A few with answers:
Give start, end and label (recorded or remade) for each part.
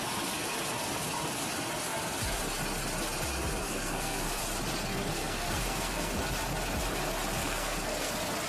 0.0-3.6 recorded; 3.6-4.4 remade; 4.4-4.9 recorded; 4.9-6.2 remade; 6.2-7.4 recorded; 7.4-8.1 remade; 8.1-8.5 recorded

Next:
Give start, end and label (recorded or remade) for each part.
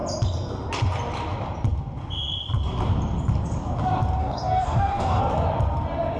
0.0-4.2 recorded; 4.2-5.2 remade; 5.2-6.2 recorded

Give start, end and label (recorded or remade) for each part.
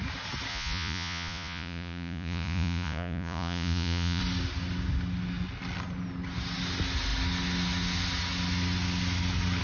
0.0-0.5 recorded; 0.5-4.2 remade; 4.2-9.6 recorded